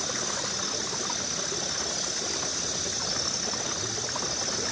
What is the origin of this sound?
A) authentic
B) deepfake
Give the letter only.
A